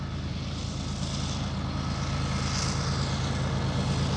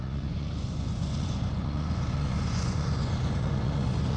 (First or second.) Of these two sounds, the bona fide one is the first